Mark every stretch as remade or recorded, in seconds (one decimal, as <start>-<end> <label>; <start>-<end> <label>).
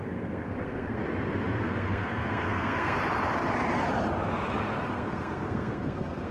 0.0-1.0 remade; 1.0-1.6 recorded; 1.6-3.0 remade; 3.0-4.9 recorded; 4.9-6.3 remade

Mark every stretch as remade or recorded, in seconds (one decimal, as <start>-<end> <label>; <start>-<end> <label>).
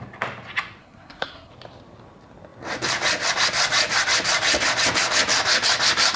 0.0-0.8 recorded; 0.8-1.5 remade; 1.5-6.2 recorded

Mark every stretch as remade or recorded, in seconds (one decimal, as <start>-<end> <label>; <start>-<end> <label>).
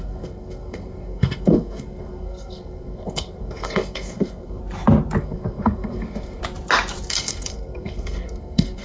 0.0-4.6 remade; 4.6-5.2 recorded; 5.2-6.4 remade; 6.4-7.1 recorded; 7.1-8.8 remade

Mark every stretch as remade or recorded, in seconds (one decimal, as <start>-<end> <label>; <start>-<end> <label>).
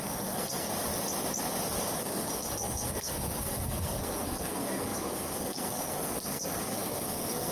0.0-0.7 remade; 0.7-2.0 recorded; 2.0-7.5 remade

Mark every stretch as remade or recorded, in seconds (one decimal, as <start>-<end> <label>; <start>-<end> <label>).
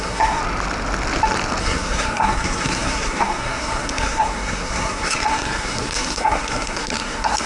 0.0-0.4 remade; 0.4-1.6 recorded; 1.6-7.5 remade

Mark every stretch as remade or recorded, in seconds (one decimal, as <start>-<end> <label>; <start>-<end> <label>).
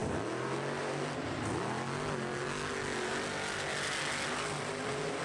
0.0-5.2 recorded